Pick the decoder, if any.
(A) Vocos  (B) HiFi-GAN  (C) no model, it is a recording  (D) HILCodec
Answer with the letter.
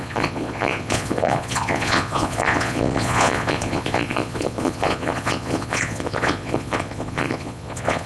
A